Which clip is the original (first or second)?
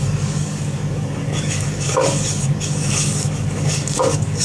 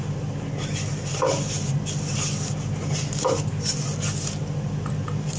second